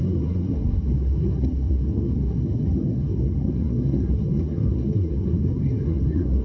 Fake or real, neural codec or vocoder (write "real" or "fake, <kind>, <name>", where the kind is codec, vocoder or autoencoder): fake, codec, SNAC